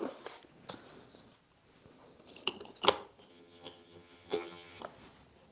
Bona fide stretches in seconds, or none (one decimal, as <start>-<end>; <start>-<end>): 0.0-3.3; 4.8-5.5